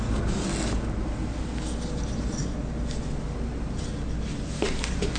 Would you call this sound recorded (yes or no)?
yes